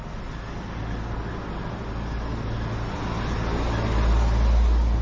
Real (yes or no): yes